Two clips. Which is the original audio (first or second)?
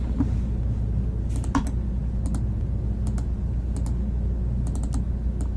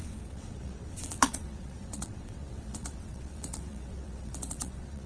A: first